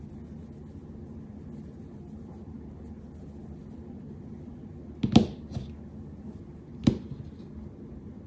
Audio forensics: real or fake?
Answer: real